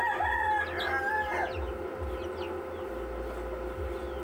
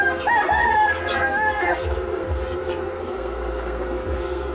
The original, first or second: first